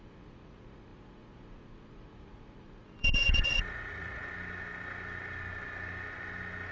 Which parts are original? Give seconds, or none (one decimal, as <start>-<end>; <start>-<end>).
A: 4.2-6.7